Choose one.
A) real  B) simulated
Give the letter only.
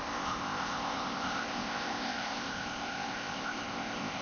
B